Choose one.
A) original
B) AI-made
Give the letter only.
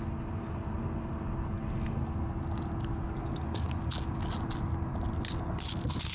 A